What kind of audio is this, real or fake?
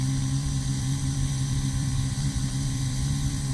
fake